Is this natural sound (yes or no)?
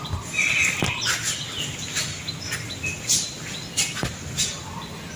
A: yes